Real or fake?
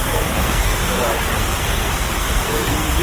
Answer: fake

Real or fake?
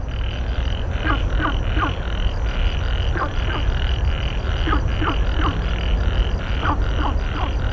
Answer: real